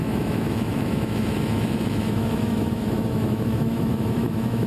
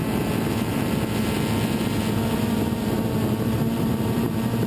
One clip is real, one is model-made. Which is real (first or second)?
second